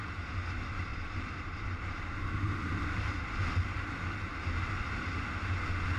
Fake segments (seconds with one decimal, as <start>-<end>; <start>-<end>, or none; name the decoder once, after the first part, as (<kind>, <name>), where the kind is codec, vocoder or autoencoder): 0.9-3.6 (vocoder, BigVGAN v2)